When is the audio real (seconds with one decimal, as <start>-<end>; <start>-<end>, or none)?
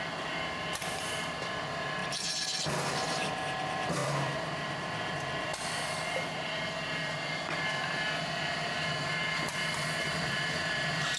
2.0-3.6; 5.5-8.5; 9.2-10.0